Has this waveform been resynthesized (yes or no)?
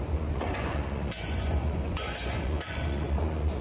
yes